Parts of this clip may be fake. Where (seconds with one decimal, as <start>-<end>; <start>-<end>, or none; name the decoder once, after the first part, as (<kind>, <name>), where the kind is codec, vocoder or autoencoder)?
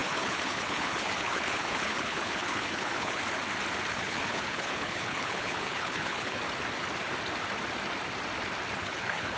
0.0-3.2 (codec, HILCodec); 3.9-6.4; 8.8-9.4